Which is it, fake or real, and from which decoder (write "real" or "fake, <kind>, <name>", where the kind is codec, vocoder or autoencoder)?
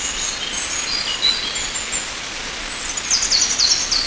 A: real